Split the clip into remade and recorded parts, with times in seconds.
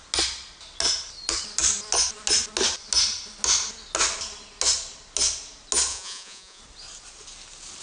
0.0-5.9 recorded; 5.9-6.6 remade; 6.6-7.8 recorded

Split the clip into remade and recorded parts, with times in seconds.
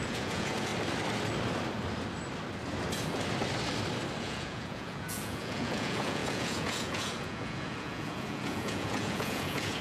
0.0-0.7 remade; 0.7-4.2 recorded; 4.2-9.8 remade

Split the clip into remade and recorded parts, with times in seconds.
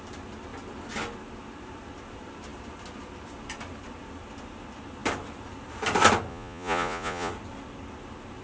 0.0-6.3 recorded; 6.3-7.3 remade; 7.3-8.4 recorded